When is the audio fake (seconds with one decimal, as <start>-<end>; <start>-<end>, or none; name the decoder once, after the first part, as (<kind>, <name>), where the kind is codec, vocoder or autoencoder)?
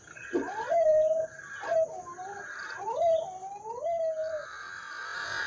none